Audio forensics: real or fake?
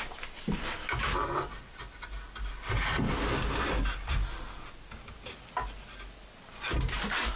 real